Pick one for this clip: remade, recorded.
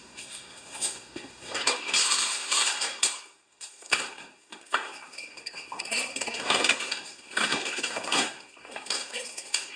remade